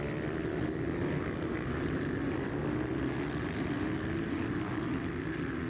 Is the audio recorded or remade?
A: recorded